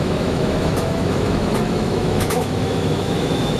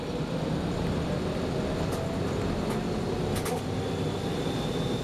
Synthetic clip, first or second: first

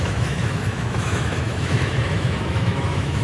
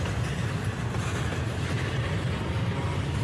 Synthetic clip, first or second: first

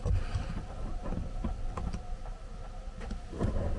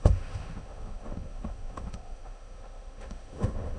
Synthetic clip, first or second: second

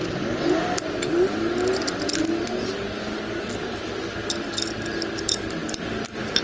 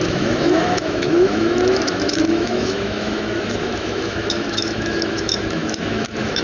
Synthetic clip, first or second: second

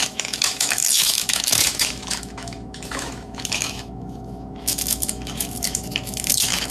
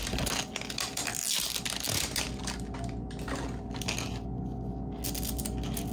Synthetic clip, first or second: first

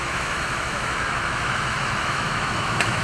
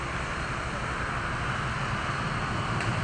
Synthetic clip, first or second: first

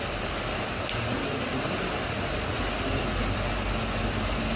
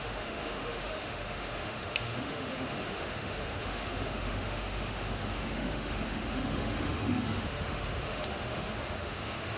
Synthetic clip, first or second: second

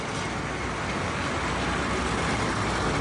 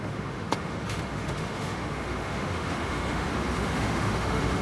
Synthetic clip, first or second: second